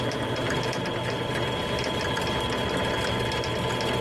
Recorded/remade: recorded